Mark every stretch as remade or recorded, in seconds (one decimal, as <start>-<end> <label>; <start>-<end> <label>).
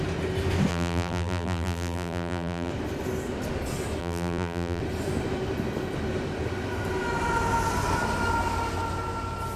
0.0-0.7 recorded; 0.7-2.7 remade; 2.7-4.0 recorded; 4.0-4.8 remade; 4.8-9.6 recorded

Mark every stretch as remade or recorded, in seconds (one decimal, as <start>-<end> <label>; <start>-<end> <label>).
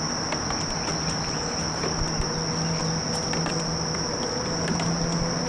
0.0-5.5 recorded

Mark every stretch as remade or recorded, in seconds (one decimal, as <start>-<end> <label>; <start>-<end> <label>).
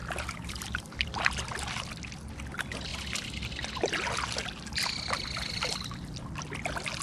0.0-1.2 remade; 1.2-7.0 recorded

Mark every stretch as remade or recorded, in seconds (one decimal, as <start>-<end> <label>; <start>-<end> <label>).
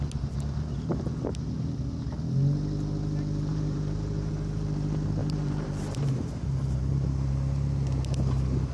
0.0-3.5 recorded; 3.5-4.3 remade; 4.3-5.2 recorded; 5.2-7.3 remade; 7.3-8.7 recorded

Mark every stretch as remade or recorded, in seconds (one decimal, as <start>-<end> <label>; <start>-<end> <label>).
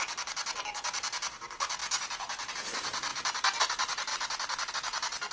0.0-1.8 remade; 1.8-2.5 recorded; 2.5-3.1 remade; 3.1-3.6 recorded; 3.6-5.3 remade